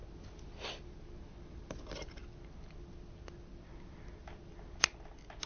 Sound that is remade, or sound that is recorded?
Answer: recorded